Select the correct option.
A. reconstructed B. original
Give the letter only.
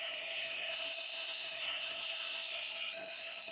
A